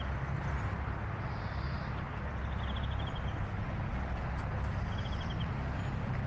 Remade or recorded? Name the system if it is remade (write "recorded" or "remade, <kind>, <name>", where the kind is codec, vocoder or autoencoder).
recorded